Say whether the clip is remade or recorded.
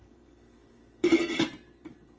remade